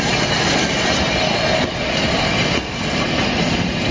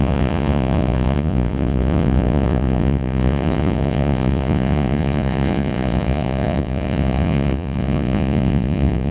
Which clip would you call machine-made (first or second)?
second